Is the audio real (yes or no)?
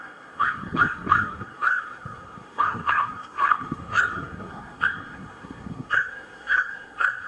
no